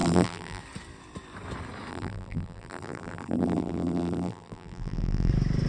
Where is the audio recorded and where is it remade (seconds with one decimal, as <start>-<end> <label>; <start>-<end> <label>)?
0.0-0.6 remade; 0.6-1.9 recorded; 1.9-5.3 remade; 5.3-5.7 recorded